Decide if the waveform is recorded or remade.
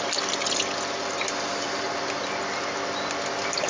recorded